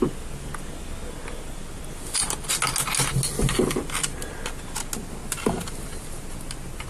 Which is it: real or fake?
real